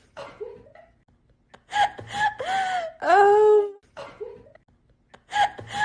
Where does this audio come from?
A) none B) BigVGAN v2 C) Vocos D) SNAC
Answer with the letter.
A